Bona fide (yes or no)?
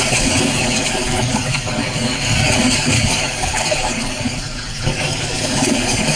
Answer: no